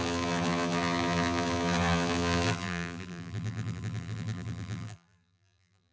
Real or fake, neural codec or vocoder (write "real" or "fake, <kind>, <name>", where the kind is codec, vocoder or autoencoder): fake, vocoder, BigVGAN v2